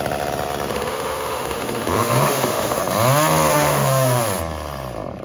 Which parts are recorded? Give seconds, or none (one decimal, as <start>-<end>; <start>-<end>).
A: 0.0-0.7; 2.8-3.5; 4.2-5.2